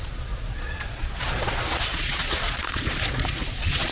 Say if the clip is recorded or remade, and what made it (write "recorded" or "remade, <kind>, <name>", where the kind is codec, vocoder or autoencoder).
remade, vocoder, Vocos